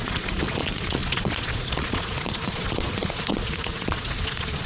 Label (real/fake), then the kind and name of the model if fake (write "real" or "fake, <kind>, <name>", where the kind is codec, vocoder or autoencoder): fake, vocoder, Vocos